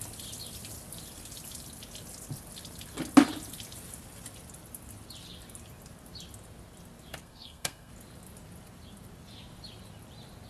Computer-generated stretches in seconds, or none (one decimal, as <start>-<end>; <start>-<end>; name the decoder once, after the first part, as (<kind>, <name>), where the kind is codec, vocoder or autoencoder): 7.2-7.9 (codec, SNAC)